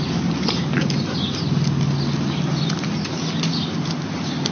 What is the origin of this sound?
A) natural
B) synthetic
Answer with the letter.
A